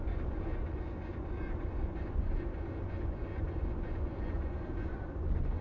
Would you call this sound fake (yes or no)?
yes